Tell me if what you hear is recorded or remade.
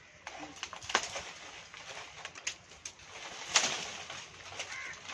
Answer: recorded